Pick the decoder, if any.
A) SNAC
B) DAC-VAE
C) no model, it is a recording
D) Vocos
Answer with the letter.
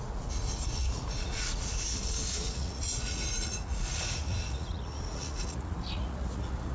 D